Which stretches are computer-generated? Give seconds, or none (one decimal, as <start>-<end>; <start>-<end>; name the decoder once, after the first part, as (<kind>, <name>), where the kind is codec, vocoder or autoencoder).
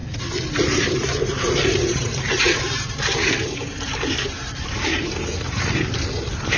0.5-6.6 (vocoder, BigVGAN v2)